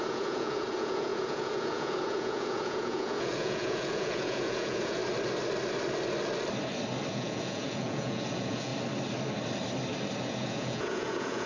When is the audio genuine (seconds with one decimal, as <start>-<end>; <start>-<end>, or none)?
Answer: 5.0-7.1; 8.7-10.2